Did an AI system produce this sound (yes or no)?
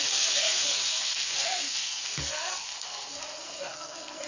yes